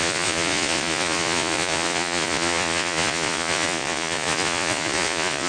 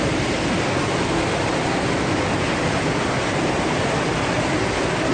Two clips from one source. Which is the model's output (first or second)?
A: first